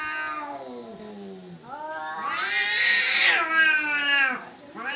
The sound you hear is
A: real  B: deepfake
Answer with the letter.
A